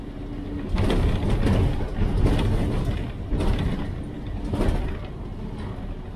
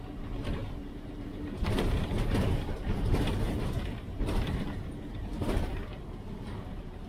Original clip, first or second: first